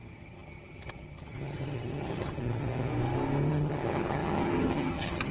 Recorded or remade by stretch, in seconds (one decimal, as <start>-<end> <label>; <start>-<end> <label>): 0.0-2.9 remade; 2.9-3.5 recorded; 3.5-5.3 remade